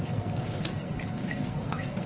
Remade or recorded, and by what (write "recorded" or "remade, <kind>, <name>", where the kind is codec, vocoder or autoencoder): remade, codec, SNAC